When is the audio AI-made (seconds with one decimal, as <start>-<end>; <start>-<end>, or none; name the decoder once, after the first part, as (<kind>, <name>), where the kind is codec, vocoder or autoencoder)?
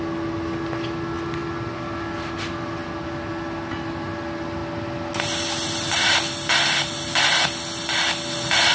none